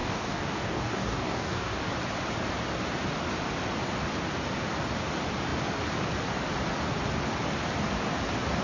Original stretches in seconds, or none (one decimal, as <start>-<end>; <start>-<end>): 1.9-8.6